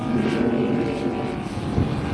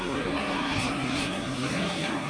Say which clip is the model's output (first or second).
second